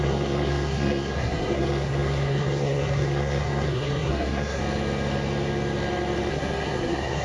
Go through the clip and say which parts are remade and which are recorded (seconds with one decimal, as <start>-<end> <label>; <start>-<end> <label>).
0.0-4.6 remade; 4.6-6.3 recorded; 6.3-7.2 remade